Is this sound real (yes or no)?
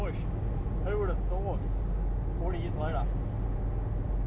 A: yes